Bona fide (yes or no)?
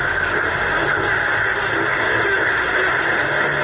yes